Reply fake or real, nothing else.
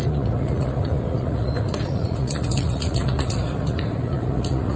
fake